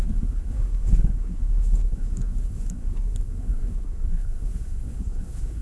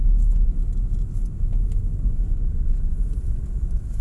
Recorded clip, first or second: second